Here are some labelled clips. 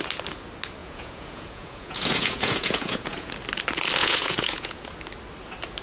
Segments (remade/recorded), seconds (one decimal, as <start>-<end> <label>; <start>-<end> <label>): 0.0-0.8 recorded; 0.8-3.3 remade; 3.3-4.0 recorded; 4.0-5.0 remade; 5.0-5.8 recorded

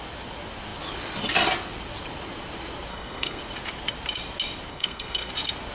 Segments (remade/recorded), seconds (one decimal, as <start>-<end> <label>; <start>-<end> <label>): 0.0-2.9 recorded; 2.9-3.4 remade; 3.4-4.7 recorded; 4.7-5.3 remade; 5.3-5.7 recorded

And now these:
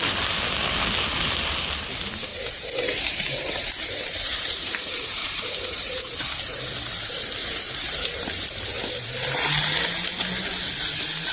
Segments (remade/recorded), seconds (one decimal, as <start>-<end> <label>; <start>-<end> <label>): 0.0-2.3 recorded; 2.3-4.8 remade; 4.8-5.2 recorded; 5.2-6.3 remade; 6.3-7.4 recorded; 7.4-8.3 remade; 8.3-11.3 recorded

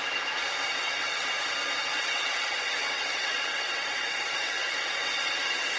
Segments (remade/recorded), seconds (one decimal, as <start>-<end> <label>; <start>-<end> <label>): 0.0-0.7 recorded; 0.7-1.3 remade; 1.3-1.8 recorded; 1.8-5.3 remade; 5.3-5.8 recorded

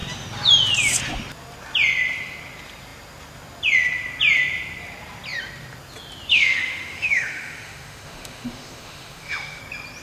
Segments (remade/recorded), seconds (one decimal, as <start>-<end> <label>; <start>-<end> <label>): 0.0-6.3 recorded; 6.3-9.6 remade; 9.6-10.0 recorded

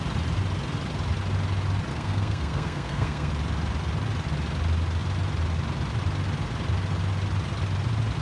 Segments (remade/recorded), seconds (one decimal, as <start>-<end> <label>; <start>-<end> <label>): 0.0-1.9 recorded; 1.9-3.3 remade; 3.3-8.2 recorded